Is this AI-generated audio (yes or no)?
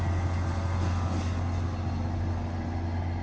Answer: no